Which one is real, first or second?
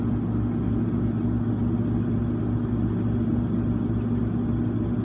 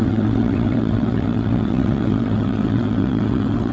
first